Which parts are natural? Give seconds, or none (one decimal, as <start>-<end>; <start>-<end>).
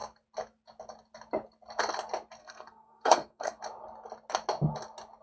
0.0-2.4; 3.6-5.2